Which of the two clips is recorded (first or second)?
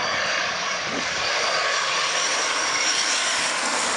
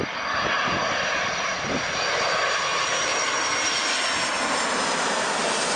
second